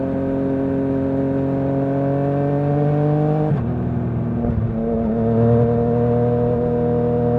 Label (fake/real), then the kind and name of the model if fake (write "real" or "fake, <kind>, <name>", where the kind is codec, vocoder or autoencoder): real